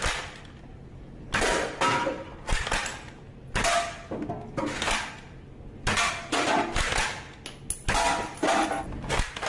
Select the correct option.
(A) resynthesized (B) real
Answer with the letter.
B